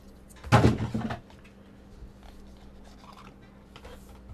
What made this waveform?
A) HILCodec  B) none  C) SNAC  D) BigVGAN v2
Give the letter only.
B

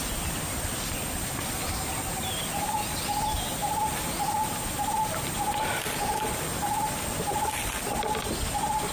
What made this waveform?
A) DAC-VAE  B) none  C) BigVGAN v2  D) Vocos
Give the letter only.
B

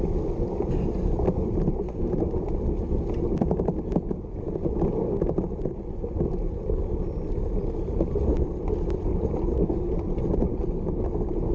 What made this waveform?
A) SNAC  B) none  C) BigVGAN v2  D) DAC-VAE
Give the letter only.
B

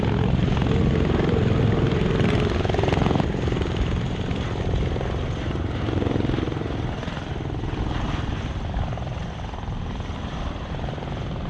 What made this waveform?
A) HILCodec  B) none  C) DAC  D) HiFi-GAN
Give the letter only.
B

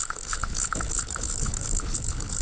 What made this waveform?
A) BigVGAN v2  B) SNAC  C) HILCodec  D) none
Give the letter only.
C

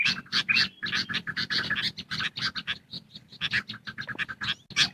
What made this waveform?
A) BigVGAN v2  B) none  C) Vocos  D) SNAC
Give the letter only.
B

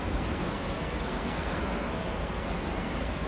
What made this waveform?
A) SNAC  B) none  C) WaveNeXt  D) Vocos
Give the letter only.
A